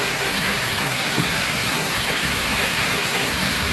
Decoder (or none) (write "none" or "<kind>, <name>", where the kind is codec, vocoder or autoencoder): codec, SNAC